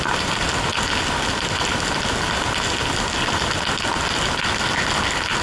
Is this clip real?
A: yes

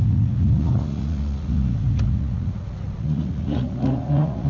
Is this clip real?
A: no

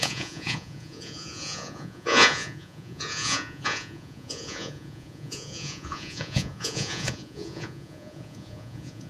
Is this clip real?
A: no